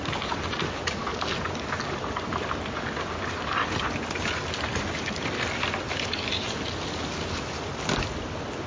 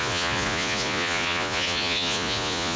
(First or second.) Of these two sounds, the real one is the first